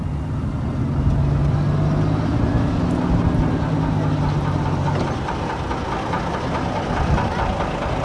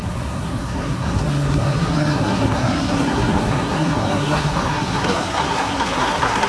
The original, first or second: first